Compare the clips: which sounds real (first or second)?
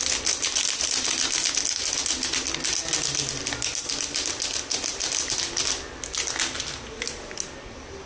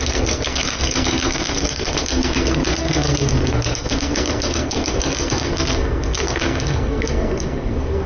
first